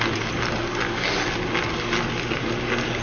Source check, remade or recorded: recorded